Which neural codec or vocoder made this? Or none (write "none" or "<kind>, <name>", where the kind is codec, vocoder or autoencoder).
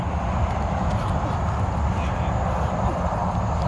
none